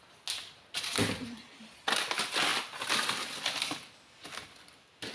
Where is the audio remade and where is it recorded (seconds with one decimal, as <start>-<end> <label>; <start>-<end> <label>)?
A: 0.0-5.1 recorded